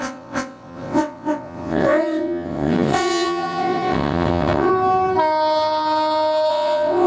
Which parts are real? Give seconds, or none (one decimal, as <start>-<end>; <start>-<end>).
4.7-6.5